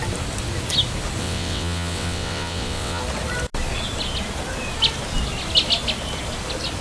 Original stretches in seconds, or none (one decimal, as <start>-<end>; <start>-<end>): 0.0-1.2; 3.0-6.8